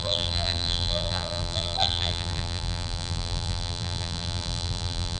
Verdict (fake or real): fake